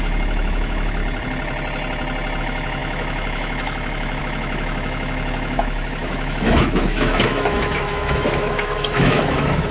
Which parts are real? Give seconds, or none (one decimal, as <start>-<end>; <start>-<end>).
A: 1.0-2.4